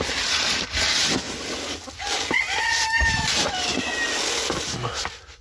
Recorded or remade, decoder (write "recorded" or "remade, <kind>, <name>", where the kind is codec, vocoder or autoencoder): recorded